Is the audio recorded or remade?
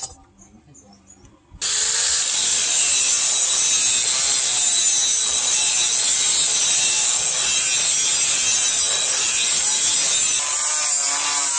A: recorded